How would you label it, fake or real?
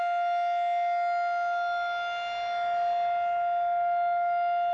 real